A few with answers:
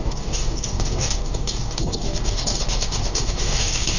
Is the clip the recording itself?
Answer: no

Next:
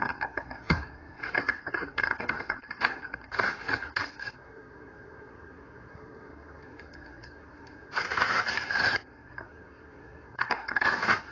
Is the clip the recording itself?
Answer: no